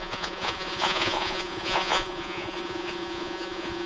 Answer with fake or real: fake